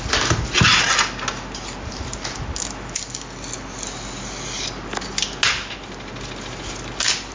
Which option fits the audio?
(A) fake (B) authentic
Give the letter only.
B